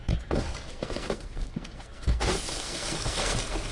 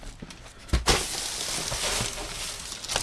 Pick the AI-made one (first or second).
first